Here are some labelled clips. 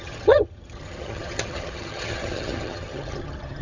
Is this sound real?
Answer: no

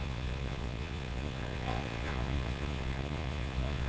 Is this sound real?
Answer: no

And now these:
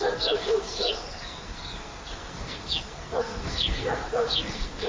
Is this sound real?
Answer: no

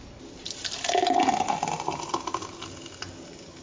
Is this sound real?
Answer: yes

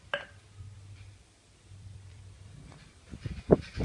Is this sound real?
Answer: no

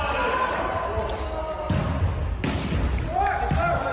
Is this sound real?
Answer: yes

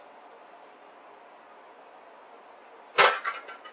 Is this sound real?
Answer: yes